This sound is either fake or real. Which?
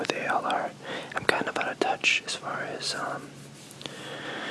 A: fake